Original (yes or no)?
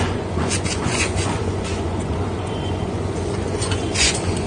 no